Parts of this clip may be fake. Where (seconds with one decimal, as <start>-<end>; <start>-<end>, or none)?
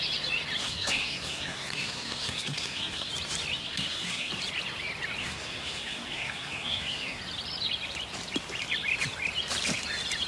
0.6-3.1; 3.6-4.3; 5.2-7.2